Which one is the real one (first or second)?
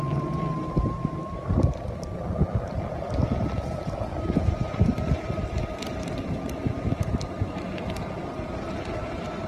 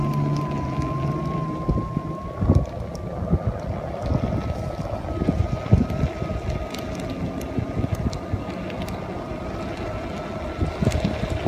second